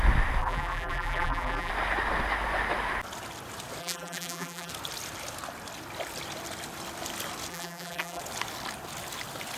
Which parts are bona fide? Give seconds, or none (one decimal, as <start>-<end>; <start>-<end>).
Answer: 0.0-0.4; 1.7-3.8; 4.7-7.5; 8.2-9.6